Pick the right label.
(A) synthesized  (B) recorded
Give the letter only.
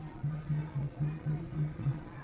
A